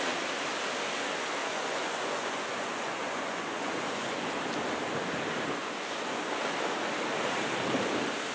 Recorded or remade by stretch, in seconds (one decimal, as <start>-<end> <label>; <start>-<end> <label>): 0.0-1.4 recorded; 1.4-4.3 remade; 4.3-5.6 recorded; 5.6-6.2 remade; 6.2-8.3 recorded